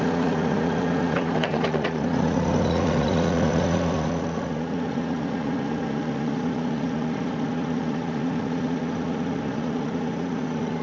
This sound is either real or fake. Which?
fake